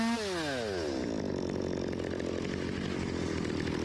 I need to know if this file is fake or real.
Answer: real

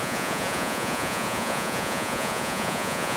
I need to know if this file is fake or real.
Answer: fake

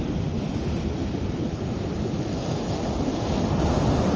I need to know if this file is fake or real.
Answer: real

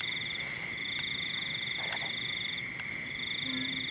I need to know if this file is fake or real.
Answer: real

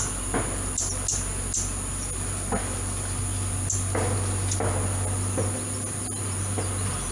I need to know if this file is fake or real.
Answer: real